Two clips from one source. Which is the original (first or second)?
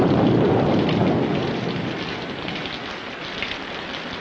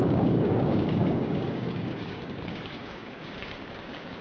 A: first